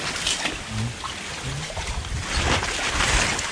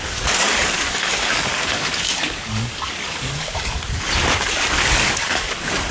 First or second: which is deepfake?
second